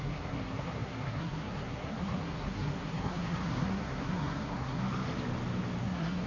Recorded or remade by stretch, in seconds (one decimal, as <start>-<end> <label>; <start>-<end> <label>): 0.0-4.8 remade; 4.8-5.8 recorded; 5.8-6.3 remade